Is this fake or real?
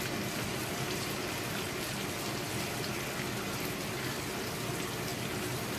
real